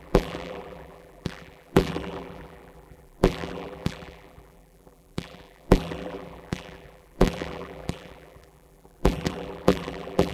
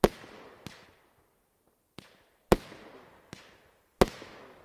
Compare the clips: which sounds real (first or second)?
second